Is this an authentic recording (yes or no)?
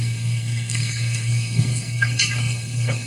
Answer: no